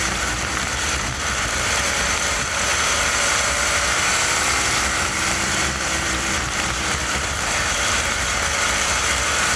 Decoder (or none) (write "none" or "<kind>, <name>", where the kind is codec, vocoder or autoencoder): vocoder, BigVGAN v2